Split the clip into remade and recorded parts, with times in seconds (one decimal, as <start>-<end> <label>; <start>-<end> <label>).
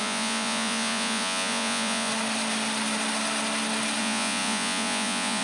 0.0-2.1 remade; 2.1-4.0 recorded; 4.0-5.4 remade